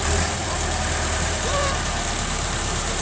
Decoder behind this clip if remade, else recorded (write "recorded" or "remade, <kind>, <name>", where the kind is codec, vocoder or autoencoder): remade, vocoder, BigVGAN v2